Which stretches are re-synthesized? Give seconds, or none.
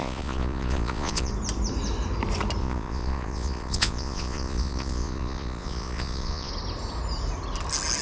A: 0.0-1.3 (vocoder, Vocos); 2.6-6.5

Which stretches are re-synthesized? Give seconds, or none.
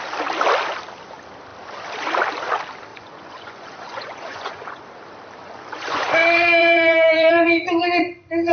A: 2.9-4.8 (vocoder, Vocos); 5.4-8.5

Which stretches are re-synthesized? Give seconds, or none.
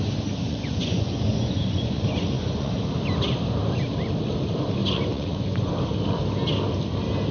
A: 0.4-2.7 (vocoder, Vocos); 4.8-5.7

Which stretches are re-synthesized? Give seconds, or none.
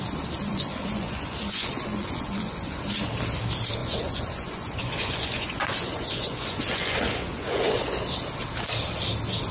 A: 0.5-2.8 (vocoder, Vocos); 3.8-8.0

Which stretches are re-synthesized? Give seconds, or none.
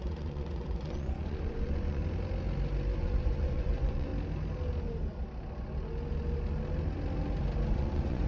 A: 0.0-2.0 (vocoder, Vocos); 3.0-4.1; 7.7-8.3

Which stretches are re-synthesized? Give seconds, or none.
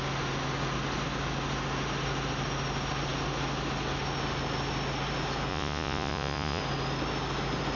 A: 5.5-6.6 (vocoder, Vocos)